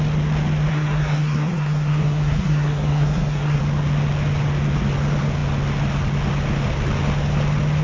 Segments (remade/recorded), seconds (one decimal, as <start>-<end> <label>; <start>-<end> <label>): 0.0-0.7 recorded; 0.7-3.6 remade; 3.6-7.8 recorded